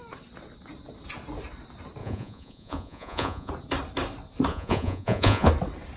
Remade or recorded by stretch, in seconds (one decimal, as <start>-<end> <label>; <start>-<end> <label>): 0.0-2.0 recorded; 2.0-3.5 remade; 3.5-4.5 recorded; 4.5-5.5 remade; 5.5-6.0 recorded